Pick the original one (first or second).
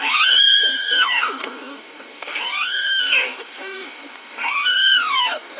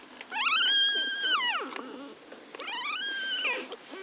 second